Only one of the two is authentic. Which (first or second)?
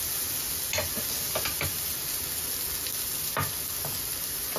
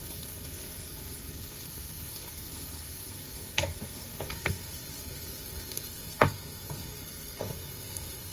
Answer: first